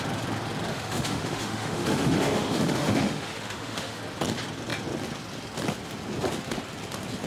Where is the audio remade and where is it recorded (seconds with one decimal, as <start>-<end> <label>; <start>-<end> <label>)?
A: 0.0-0.7 recorded; 0.7-4.0 remade; 4.0-7.3 recorded